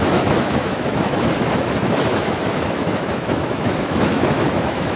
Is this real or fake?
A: fake